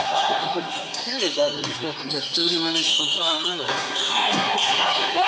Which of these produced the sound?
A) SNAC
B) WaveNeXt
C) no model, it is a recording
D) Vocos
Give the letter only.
A